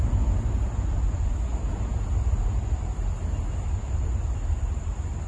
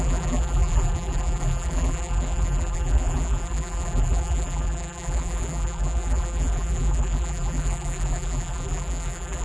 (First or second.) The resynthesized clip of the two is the second